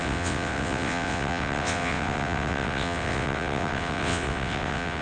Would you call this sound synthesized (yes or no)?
yes